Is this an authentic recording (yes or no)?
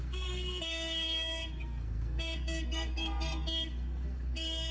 no